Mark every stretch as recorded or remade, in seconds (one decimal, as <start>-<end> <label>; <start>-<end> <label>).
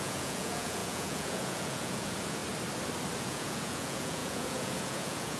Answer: 0.0-2.4 remade; 2.4-3.2 recorded; 3.2-5.4 remade